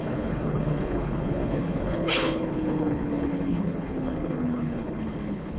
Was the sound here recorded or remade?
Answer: remade